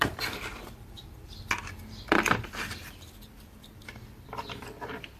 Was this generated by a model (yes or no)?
yes